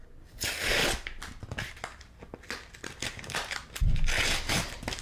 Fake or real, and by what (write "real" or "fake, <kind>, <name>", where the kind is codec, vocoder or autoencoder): real